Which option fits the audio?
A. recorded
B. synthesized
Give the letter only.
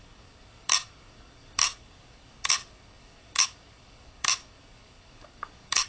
B